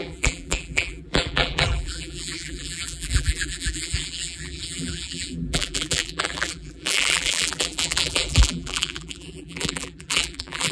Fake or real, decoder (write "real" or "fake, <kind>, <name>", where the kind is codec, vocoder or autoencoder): fake, vocoder, BigVGAN v2